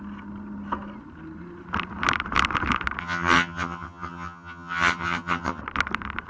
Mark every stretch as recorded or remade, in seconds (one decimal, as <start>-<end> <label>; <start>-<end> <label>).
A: 0.0-3.0 recorded; 3.0-5.6 remade; 5.6-6.3 recorded